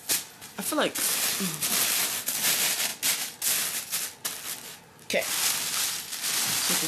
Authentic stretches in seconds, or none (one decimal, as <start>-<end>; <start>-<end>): 0.0-6.9